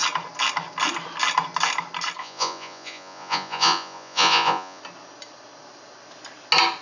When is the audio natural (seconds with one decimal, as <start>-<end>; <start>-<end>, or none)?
0.0-2.2; 4.8-6.8